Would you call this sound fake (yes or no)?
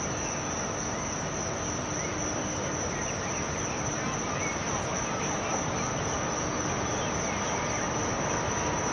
no